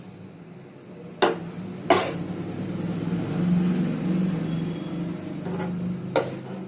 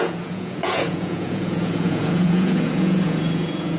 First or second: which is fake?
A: second